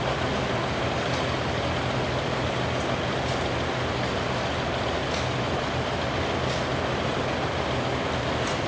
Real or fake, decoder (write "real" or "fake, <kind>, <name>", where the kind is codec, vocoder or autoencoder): real